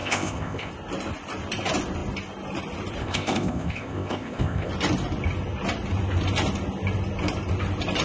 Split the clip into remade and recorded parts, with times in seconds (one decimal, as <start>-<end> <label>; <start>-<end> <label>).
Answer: 0.0-0.7 remade; 0.7-3.0 recorded; 3.0-4.7 remade; 4.7-8.0 recorded